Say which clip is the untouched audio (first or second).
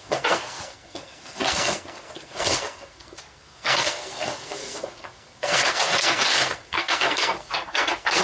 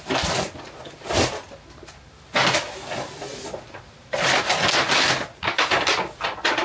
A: second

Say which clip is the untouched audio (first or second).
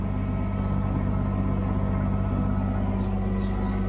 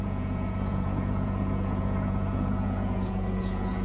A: first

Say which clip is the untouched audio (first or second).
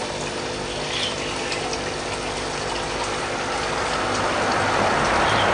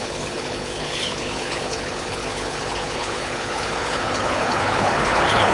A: first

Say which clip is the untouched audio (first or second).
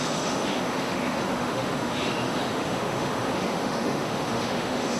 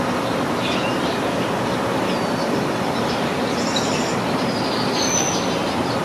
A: second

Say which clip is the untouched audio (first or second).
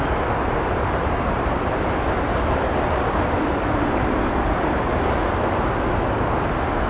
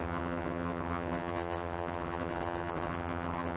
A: first